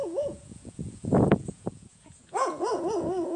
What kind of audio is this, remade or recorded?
remade